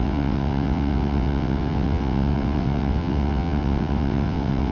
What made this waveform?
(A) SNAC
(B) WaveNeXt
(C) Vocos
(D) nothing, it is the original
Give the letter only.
B